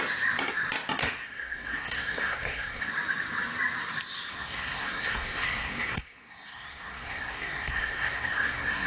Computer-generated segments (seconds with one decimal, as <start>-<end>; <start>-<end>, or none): 1.0-2.9; 4.3-8.9